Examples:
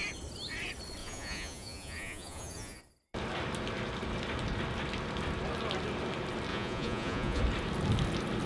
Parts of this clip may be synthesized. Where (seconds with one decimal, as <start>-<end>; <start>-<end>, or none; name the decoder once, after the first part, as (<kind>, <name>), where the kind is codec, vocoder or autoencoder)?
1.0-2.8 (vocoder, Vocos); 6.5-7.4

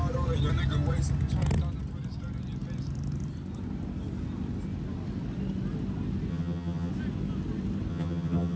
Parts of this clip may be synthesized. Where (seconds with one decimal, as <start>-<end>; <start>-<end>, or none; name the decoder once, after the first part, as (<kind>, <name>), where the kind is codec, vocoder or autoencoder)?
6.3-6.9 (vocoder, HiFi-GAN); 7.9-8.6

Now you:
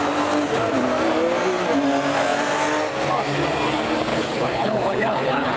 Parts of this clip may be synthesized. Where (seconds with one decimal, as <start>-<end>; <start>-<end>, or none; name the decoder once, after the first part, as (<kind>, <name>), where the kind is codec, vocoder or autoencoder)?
4.1-5.6 (codec, HILCodec)